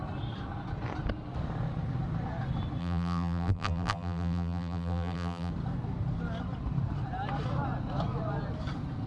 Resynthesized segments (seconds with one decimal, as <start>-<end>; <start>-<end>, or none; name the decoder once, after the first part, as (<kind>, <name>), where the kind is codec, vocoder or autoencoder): 2.8-5.5 (vocoder, BigVGAN v2)